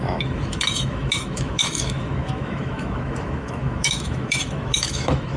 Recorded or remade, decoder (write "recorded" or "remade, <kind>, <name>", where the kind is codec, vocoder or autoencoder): remade, autoencoder, DAC-VAE